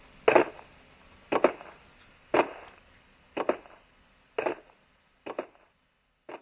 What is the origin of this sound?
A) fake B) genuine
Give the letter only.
B